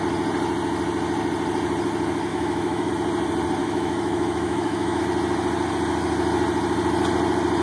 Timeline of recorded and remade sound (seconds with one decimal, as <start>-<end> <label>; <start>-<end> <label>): 0.0-2.3 recorded; 2.3-2.9 remade; 2.9-3.6 recorded; 3.6-5.0 remade; 5.0-7.6 recorded

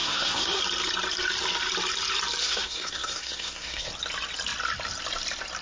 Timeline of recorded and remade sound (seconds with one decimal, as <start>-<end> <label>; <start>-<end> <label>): 0.0-0.6 remade; 0.6-2.4 recorded; 2.4-3.9 remade; 3.9-5.6 recorded

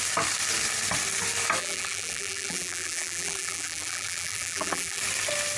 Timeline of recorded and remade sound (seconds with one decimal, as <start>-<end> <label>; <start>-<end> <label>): 0.0-1.6 recorded; 1.6-5.0 remade; 5.0-5.6 recorded

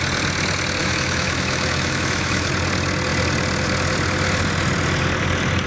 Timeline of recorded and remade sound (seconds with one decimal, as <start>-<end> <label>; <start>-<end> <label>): 0.0-0.8 recorded; 0.8-2.5 remade; 2.5-5.7 recorded

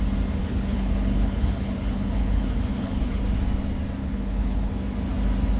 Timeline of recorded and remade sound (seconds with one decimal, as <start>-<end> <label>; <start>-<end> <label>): 0.0-0.4 recorded; 0.4-3.2 remade; 3.2-4.0 recorded; 4.0-4.7 remade; 4.7-5.6 recorded